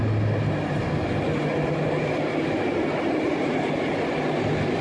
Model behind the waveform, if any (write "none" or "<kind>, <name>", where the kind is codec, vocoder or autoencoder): none